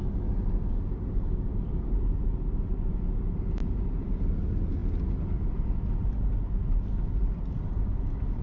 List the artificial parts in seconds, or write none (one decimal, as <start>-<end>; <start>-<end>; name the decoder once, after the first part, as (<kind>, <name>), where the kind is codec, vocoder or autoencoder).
none